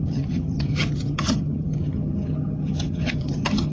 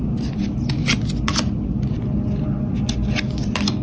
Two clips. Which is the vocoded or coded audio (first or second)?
first